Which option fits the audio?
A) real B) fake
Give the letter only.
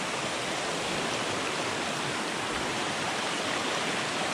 A